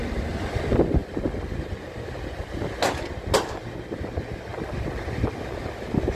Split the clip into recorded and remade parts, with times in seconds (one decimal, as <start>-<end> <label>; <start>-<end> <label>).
0.0-6.2 recorded